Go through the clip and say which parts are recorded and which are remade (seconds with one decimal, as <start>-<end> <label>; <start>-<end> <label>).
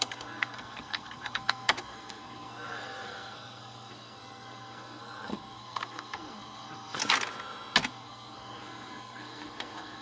0.0-7.0 remade; 7.0-7.9 recorded; 7.9-10.0 remade